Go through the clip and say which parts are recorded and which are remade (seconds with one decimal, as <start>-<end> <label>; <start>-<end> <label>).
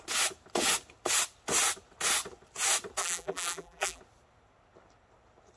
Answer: 0.0-3.0 recorded; 3.0-4.0 remade; 4.0-5.6 recorded